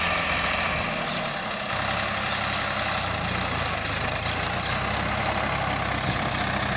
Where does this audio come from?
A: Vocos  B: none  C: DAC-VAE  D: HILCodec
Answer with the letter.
B